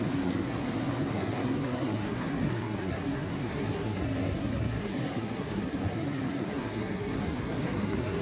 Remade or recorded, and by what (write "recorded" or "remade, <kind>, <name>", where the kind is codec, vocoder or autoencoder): remade, codec, SNAC